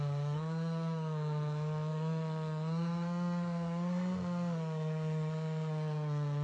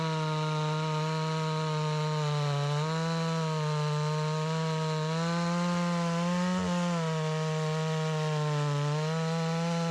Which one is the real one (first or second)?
second